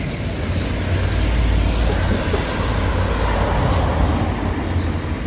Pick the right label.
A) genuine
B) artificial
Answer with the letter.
A